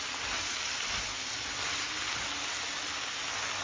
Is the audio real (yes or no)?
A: yes